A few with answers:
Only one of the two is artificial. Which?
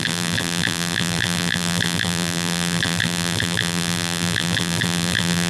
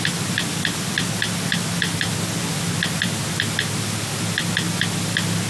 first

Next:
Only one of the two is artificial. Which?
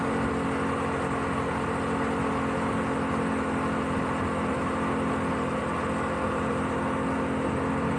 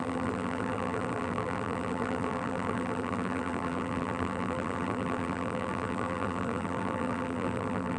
second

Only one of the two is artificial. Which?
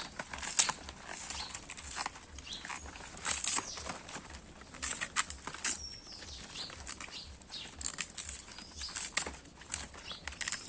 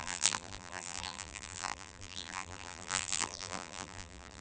second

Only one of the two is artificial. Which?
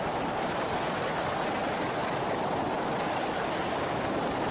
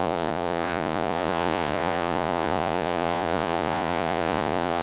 second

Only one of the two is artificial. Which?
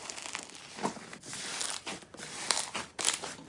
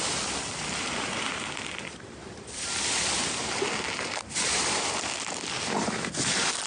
second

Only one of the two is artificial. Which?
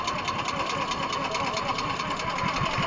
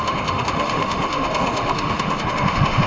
second